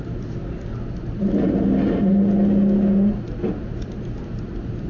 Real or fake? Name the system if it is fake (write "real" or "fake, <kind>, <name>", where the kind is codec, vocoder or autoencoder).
real